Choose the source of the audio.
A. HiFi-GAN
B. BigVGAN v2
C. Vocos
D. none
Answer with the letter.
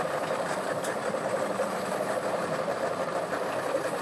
D